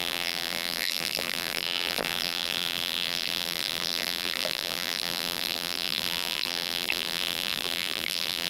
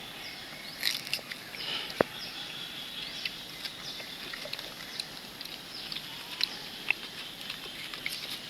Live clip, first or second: second